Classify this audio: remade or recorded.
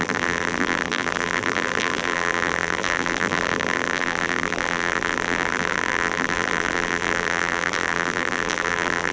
remade